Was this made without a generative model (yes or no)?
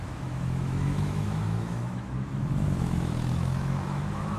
no